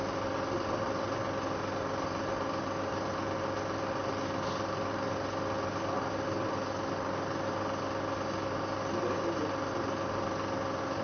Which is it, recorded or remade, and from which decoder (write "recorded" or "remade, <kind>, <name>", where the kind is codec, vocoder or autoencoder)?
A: recorded